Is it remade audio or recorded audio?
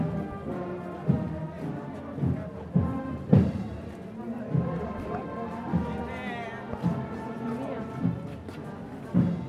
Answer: recorded